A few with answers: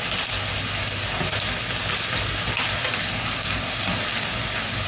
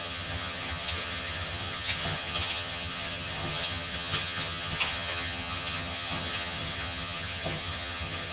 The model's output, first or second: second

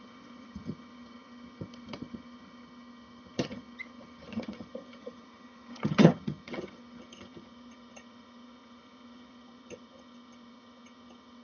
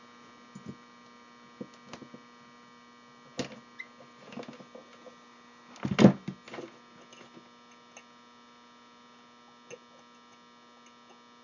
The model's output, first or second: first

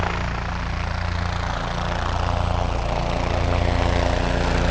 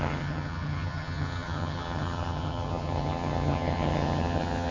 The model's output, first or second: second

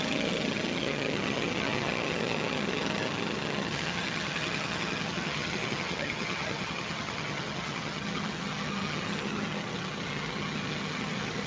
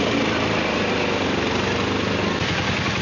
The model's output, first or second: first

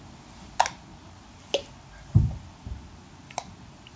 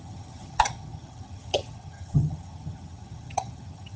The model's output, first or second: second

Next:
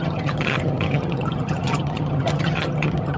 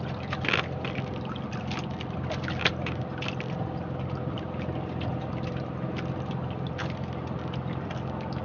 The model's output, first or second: first